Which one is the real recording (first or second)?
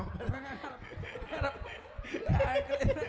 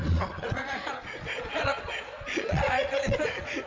first